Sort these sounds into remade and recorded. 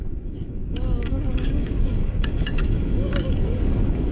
remade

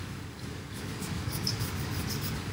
remade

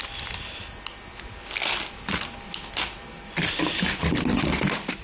recorded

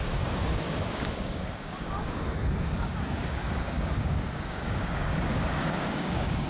remade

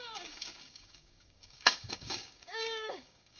remade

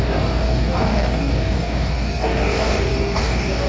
remade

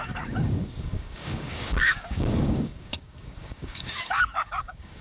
remade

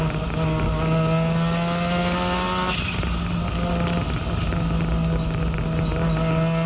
recorded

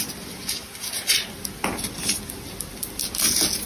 recorded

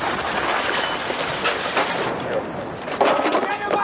recorded